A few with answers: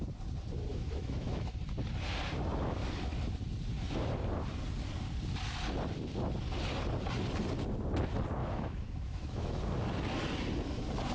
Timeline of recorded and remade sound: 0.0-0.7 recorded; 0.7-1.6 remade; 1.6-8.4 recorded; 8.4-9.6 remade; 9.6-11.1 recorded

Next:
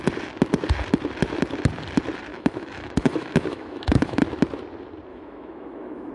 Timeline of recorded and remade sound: 0.0-2.3 recorded; 2.3-4.2 remade; 4.2-5.1 recorded; 5.1-6.1 remade

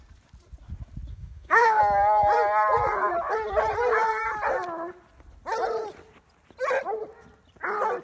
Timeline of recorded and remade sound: 0.0-1.1 recorded; 1.1-1.8 remade; 1.8-8.0 recorded

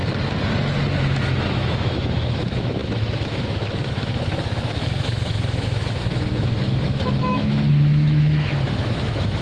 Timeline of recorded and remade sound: 0.0-1.0 recorded; 1.0-9.4 remade

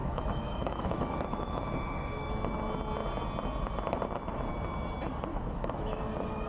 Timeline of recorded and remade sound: 0.0-2.3 remade; 2.3-5.3 recorded; 5.3-6.0 remade; 6.0-6.5 recorded